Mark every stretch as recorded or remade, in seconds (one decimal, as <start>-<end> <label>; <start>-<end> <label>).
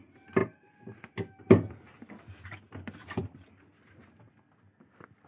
0.0-5.3 recorded